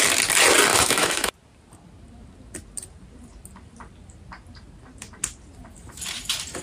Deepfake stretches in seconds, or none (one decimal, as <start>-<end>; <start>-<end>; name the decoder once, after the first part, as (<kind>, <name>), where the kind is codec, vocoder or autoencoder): 0.7-1.3 (autoencoder, DAC-VAE)